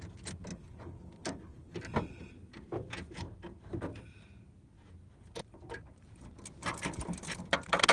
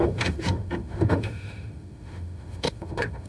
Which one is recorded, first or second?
first